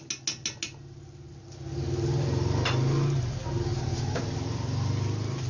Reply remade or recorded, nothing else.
recorded